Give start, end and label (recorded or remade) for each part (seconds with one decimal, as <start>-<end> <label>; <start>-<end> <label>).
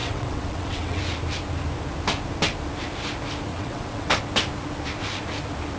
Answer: 0.0-1.0 remade; 1.0-3.5 recorded; 3.5-4.2 remade; 4.2-5.8 recorded